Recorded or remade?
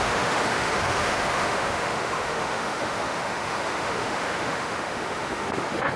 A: remade